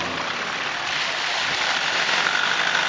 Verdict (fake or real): real